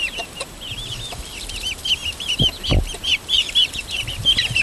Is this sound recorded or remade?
recorded